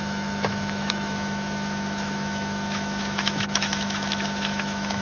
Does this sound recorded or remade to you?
remade